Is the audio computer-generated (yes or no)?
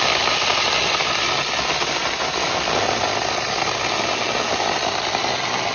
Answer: no